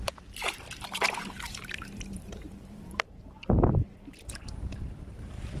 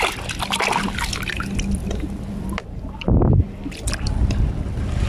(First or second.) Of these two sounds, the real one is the second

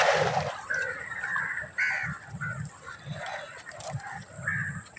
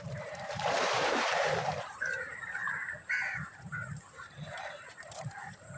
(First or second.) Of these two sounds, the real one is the first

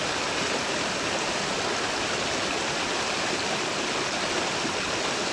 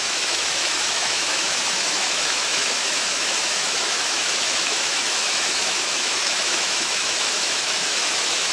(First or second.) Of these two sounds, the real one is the first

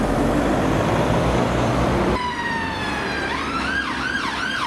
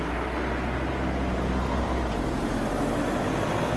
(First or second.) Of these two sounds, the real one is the second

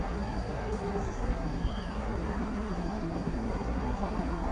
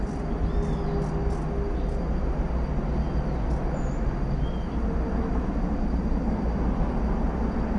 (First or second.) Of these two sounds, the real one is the second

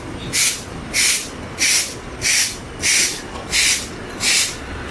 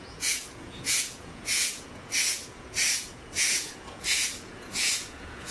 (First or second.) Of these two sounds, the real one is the first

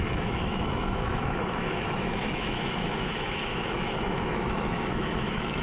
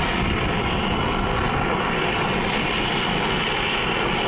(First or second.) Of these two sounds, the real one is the second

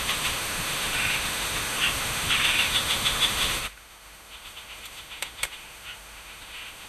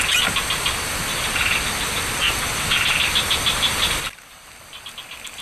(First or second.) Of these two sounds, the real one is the second